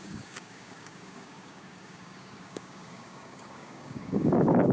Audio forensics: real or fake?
fake